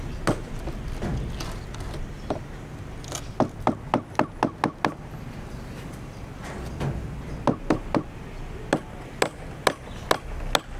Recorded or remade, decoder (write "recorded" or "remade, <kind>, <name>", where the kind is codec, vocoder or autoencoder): recorded